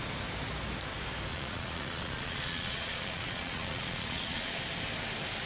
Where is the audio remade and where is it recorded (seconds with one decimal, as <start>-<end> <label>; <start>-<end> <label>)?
0.0-1.3 recorded; 1.3-4.6 remade; 4.6-5.5 recorded